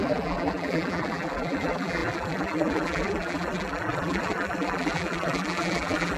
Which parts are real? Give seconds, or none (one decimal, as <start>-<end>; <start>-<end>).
none